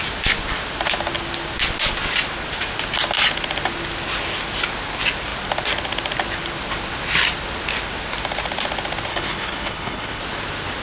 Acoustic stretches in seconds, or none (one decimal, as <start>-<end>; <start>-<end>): 0.0-9.1; 10.2-10.8